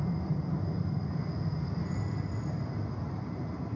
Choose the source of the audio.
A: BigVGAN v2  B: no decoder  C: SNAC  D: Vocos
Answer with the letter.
B